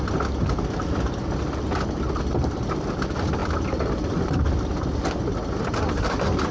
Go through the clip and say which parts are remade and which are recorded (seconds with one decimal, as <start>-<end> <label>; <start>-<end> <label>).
0.0-6.5 recorded